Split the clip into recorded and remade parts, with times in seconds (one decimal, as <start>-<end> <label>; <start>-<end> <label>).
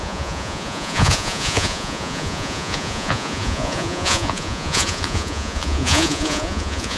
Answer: 0.0-7.0 remade